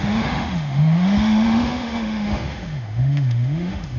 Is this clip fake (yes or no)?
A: yes